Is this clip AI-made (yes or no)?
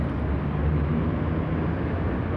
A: no